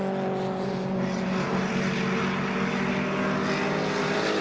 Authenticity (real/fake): real